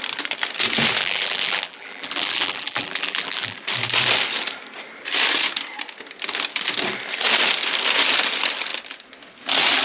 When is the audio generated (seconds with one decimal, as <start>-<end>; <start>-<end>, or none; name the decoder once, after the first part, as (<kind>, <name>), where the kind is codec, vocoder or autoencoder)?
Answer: 1.0-3.6 (vocoder, BigVGAN v2)